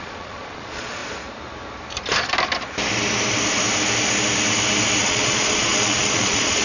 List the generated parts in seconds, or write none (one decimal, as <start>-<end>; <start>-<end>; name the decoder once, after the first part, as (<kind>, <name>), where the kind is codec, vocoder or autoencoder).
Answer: 0.0-1.0 (vocoder, Vocos); 5.0-6.6